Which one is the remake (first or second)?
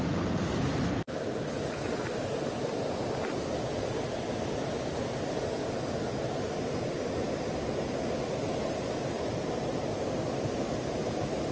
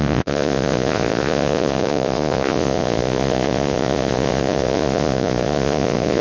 second